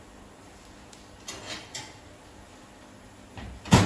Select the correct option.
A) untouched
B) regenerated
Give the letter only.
A